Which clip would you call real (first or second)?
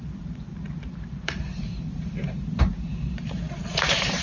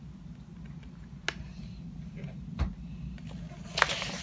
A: second